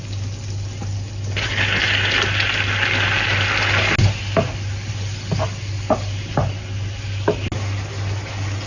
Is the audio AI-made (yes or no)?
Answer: no